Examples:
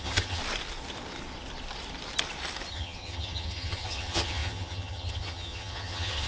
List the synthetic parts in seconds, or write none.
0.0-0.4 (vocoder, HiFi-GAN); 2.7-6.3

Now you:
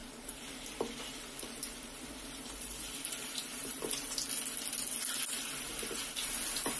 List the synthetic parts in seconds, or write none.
0.0-4.1 (vocoder, BigVGAN v2)

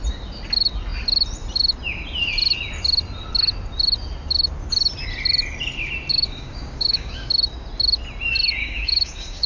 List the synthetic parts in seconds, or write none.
6.1-7.3 (codec, DAC); 8.6-9.5

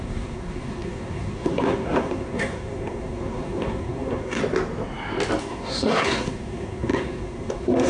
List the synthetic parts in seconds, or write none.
0.0-4.4 (codec, SNAC); 5.4-7.9

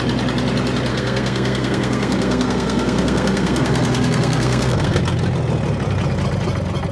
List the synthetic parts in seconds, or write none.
0.9-5.0 (codec, SNAC)

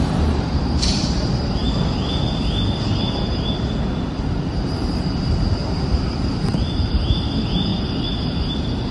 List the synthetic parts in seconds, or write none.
0.0-2.0 (vocoder, BigVGAN v2); 4.4-7.7; 8.5-8.9

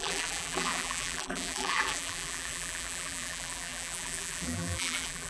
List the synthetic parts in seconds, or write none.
0.0-5.3 (vocoder, BigVGAN v2)

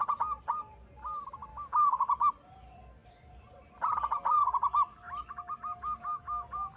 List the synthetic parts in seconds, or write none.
1.5-2.3 (autoencoder, DAC-VAE)